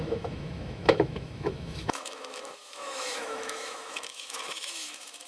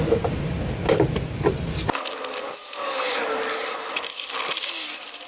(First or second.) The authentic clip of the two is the second